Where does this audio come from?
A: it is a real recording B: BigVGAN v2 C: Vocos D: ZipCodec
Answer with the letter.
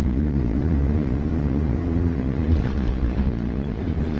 C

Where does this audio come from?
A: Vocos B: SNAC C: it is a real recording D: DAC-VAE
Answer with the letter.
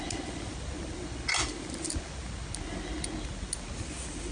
C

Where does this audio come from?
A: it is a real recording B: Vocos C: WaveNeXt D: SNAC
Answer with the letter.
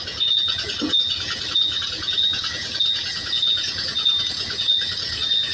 B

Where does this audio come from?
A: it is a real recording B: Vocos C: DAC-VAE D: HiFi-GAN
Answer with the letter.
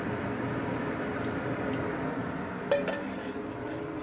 A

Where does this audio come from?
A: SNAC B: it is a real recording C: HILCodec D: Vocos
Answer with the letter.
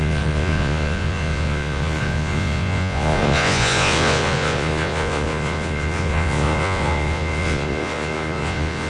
D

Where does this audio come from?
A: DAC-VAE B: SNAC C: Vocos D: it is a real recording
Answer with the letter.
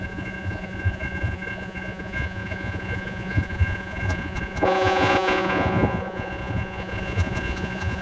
C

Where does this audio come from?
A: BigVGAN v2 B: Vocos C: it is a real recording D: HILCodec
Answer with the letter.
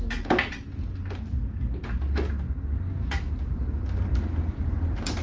C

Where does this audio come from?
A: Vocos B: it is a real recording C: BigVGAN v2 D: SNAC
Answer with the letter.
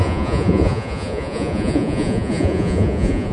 A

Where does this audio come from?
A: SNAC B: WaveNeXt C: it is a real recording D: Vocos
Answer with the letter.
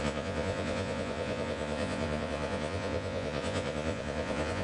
D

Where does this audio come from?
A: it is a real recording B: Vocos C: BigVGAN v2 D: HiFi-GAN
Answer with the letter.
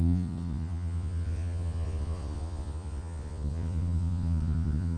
B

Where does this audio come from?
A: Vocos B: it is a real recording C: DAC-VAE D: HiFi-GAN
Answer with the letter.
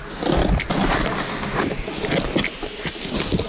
B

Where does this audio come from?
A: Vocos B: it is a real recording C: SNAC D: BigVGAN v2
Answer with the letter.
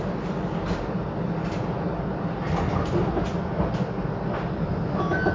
B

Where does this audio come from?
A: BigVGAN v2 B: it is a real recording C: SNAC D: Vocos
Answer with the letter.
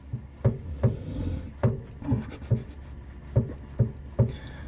B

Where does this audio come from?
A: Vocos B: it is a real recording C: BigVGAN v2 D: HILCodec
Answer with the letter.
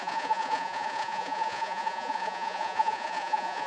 A